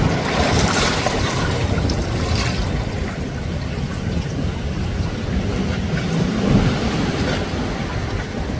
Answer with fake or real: real